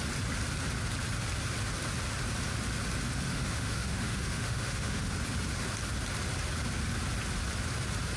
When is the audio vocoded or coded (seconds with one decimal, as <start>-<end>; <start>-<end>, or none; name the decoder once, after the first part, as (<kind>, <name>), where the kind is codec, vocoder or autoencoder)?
3.3-5.1 (autoencoder, DAC-VAE)